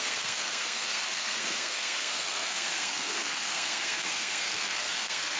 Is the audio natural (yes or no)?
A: no